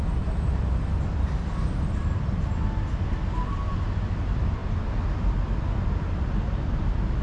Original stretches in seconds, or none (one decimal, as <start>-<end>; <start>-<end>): 0.0-7.2